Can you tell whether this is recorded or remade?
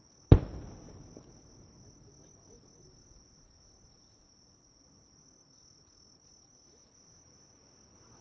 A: recorded